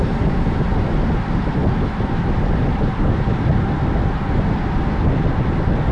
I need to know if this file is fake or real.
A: real